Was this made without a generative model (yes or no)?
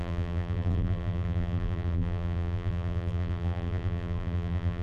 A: no